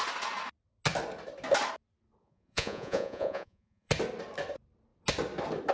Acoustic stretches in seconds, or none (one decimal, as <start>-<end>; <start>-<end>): 0.0-2.2; 3.9-5.7